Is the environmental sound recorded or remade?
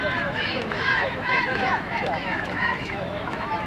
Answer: remade